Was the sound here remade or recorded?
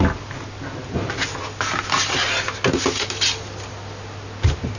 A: recorded